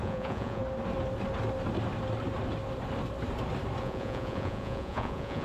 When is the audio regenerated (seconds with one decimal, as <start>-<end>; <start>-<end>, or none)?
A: 0.0-0.6; 3.8-5.4

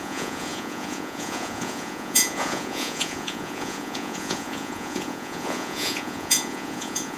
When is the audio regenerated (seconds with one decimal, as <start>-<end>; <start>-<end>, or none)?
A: 0.0-7.2

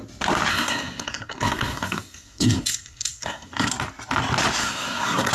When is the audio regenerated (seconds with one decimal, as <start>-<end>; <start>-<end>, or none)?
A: 0.5-3.7; 4.6-5.3

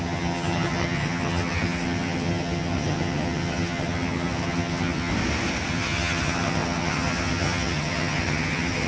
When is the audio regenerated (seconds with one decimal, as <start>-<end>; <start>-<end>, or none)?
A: 0.0-5.1; 5.7-8.9

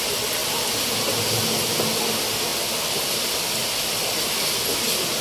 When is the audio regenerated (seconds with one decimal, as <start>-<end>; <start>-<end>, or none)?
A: 0.4-1.0; 2.5-3.7

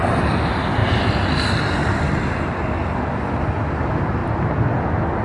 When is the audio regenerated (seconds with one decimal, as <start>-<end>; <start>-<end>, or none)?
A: 0.8-2.5